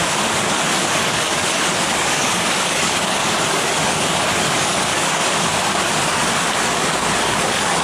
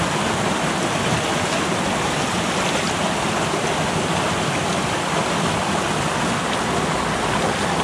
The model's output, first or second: first